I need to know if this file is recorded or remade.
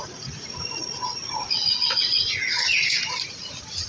remade